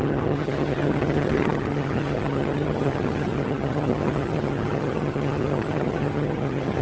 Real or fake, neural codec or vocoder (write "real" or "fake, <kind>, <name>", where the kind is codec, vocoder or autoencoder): fake, vocoder, HiFi-GAN